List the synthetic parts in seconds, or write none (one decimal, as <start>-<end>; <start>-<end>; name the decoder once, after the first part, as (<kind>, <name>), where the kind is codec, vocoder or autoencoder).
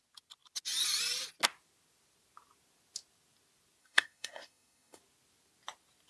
3.8-5.0 (codec, SNAC)